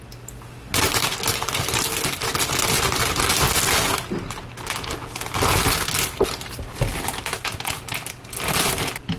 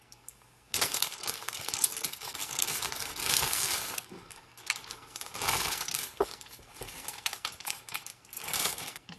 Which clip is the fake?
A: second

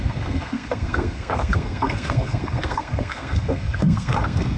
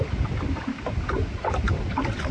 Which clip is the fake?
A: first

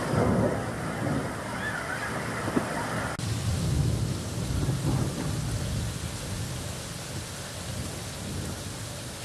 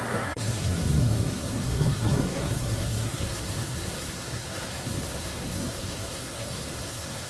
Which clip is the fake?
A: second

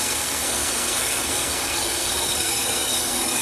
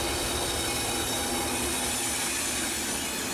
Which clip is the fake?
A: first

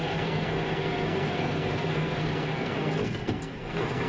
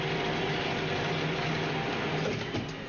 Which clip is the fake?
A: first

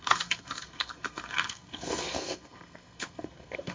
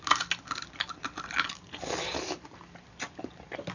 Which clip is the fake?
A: first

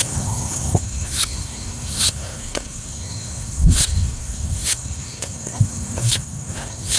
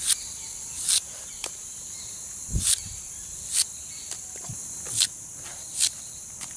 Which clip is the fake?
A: first